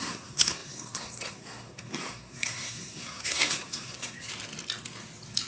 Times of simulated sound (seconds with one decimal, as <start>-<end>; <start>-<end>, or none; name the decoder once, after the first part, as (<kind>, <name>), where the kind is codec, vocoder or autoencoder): 0.0-4.3 (codec, SNAC)